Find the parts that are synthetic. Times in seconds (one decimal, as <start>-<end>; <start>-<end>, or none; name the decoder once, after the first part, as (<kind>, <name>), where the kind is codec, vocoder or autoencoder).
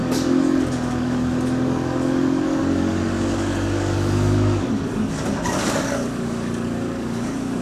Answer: 0.0-7.6 (codec, DAC)